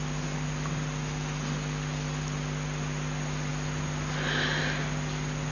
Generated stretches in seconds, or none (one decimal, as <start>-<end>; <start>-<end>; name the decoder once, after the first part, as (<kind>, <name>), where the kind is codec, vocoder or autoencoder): none